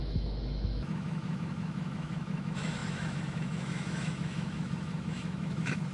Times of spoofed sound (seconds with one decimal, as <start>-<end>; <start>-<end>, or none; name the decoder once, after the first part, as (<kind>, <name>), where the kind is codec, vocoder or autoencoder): 0.0-5.9 (autoencoder, DAC-VAE)

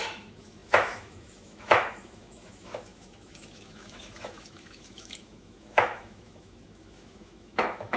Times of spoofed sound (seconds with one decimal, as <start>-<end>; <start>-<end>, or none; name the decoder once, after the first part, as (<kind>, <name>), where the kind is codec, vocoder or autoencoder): 0.0-8.0 (autoencoder, DAC-VAE)

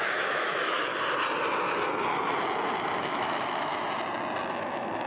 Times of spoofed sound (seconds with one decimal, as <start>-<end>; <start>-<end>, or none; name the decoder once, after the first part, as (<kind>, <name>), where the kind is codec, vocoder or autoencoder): 0.0-0.9 (autoencoder, DAC-VAE); 3.0-3.7; 4.5-5.1

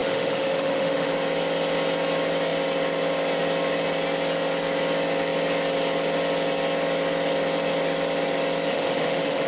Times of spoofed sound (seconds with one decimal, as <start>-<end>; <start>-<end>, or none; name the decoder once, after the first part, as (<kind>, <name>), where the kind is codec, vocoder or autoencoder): 0.0-1.1 (autoencoder, DAC-VAE); 8.7-9.5

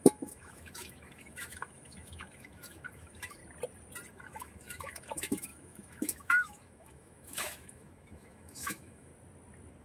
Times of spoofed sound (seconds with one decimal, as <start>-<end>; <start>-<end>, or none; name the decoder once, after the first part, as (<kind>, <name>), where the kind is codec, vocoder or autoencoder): 0.0-3.4 (autoencoder, DAC-VAE); 4.1-9.1

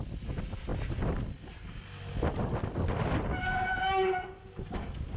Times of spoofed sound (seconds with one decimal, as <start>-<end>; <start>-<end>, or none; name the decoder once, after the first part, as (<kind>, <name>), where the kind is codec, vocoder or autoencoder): none

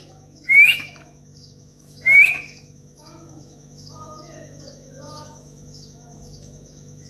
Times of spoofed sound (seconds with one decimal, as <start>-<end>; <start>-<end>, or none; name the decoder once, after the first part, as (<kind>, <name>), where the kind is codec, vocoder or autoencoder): 0.0-7.1 (autoencoder, DAC-VAE)

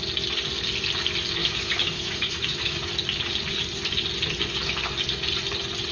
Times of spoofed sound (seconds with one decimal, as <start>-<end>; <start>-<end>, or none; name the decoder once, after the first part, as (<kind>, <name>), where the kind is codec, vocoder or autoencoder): 1.4-2.9 (autoencoder, DAC-VAE)